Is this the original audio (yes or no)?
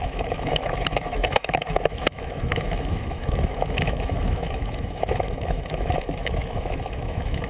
no